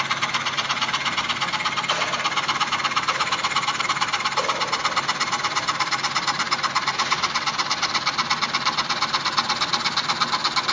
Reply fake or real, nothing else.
real